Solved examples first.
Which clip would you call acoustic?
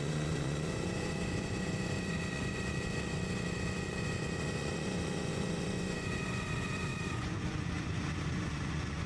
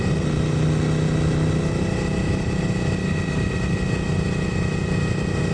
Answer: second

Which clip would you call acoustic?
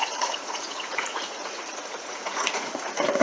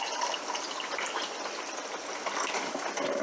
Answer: second